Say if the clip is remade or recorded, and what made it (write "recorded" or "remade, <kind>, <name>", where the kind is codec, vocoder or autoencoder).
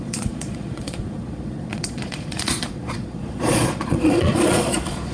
remade, vocoder, Vocos